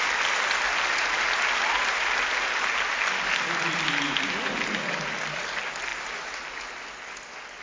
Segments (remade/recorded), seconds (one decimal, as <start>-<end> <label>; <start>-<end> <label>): 0.0-7.6 recorded

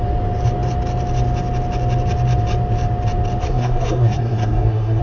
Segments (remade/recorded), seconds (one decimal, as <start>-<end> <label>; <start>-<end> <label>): 0.0-3.4 recorded; 3.4-5.0 remade

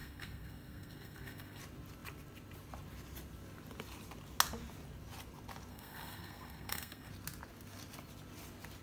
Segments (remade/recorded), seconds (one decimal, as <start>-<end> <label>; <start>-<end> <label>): 0.0-1.6 remade; 1.6-5.7 recorded; 5.7-7.1 remade; 7.1-8.8 recorded

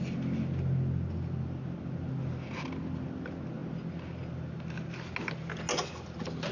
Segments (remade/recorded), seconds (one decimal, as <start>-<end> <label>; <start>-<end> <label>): 0.0-6.5 recorded